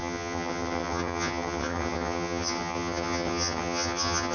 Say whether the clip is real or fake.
fake